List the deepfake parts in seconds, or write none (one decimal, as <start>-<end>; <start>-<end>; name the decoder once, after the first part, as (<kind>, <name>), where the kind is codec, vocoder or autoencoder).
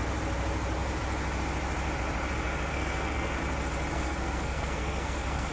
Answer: 2.7-3.4 (codec, SNAC); 3.9-5.5